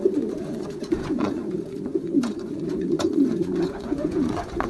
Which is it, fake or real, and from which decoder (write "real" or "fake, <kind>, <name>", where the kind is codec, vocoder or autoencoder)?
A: fake, vocoder, Vocos